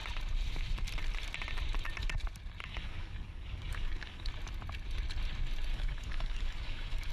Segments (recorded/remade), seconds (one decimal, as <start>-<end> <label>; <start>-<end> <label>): 0.0-2.6 recorded; 2.6-4.3 remade; 4.3-5.7 recorded; 5.7-7.1 remade